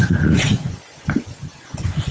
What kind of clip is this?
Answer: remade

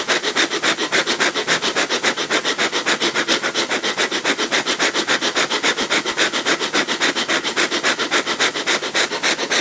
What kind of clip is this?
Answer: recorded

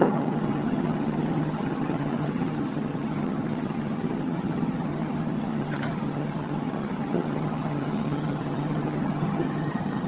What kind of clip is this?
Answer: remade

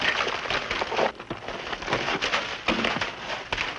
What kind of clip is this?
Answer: recorded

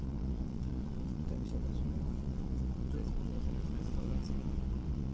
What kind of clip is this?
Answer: remade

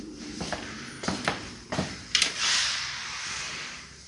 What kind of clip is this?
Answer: remade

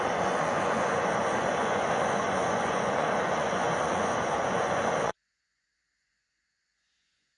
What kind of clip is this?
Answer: remade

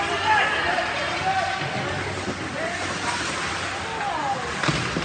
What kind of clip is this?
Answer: recorded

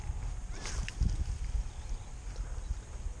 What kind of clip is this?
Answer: recorded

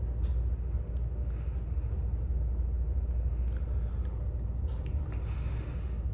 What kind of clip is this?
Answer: recorded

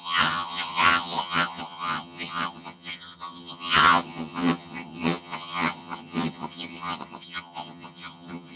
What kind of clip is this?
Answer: remade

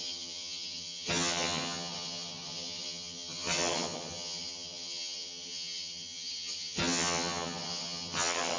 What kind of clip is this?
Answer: remade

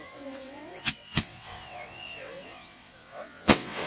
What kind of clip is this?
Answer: remade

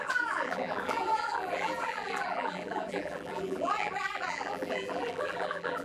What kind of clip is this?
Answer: remade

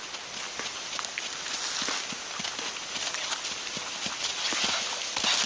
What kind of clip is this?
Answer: recorded